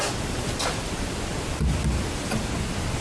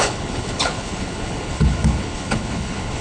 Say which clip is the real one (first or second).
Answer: first